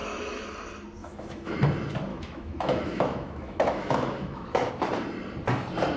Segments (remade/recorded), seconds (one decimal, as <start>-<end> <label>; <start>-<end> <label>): 0.0-0.5 remade; 0.5-1.0 recorded; 1.0-1.6 remade; 1.6-2.1 recorded; 2.1-4.7 remade; 4.7-6.0 recorded